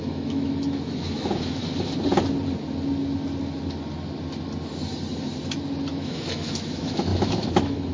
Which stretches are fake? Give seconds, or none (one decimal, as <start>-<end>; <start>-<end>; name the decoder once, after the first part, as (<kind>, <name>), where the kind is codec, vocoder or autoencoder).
0.0-1.6 (autoencoder, DAC-VAE); 5.9-7.9

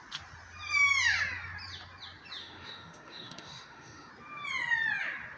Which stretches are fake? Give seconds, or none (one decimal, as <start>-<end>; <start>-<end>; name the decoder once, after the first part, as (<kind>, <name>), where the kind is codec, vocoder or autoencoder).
2.4-4.1 (autoencoder, DAC-VAE)

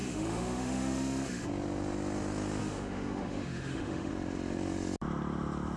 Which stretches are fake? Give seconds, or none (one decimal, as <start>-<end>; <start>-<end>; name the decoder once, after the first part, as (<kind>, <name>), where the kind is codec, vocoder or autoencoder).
0.0-1.5 (autoencoder, DAC-VAE); 2.6-4.1